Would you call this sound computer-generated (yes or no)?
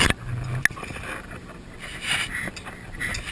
no